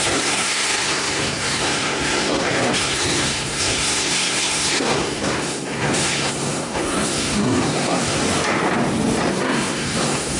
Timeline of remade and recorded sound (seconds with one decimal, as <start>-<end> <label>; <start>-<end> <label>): 0.0-8.2 remade; 8.2-9.3 recorded; 9.3-10.4 remade